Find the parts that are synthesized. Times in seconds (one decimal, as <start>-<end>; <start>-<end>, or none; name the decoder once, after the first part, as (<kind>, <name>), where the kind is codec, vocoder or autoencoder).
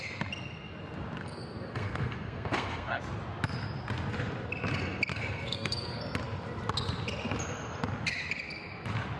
1.2-3.0 (codec, SNAC); 5.1-6.0